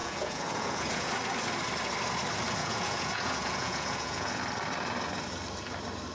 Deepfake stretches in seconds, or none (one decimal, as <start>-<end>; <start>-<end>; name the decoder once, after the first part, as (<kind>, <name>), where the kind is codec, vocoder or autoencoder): 0.0-1.1 (vocoder, Vocos); 2.6-4.4